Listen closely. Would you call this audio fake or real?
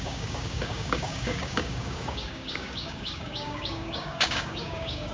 fake